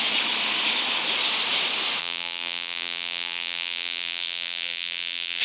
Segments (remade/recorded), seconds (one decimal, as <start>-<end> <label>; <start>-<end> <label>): 0.0-2.0 recorded; 2.0-5.4 remade

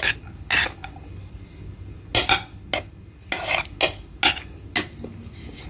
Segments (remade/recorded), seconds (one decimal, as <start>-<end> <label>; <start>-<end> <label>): 0.0-5.7 recorded

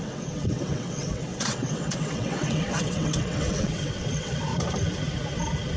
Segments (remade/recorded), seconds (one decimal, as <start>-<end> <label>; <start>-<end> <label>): 0.0-4.5 remade; 4.5-5.8 recorded

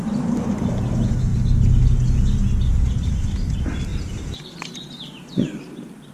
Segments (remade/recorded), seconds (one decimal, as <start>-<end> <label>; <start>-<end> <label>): 0.0-1.3 remade; 1.3-2.6 recorded; 2.6-6.1 remade

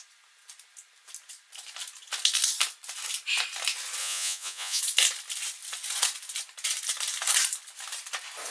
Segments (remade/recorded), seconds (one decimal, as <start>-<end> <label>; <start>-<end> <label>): 0.0-4.0 recorded; 4.0-4.8 remade; 4.8-8.5 recorded

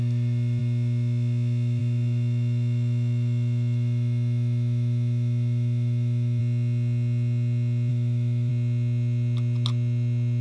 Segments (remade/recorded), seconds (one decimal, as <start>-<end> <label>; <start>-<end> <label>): 0.0-6.4 remade; 6.4-7.9 recorded; 7.9-8.5 remade; 8.5-10.4 recorded